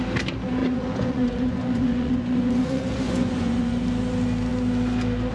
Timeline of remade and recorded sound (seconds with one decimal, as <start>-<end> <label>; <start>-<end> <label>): 0.0-0.6 recorded; 0.6-3.8 remade; 3.8-5.3 recorded